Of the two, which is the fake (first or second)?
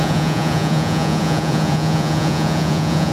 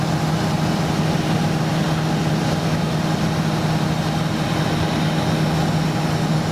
first